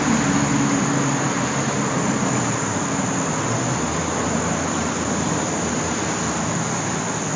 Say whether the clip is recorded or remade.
recorded